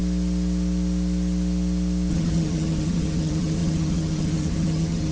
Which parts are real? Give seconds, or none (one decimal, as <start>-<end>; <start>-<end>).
0.0-2.1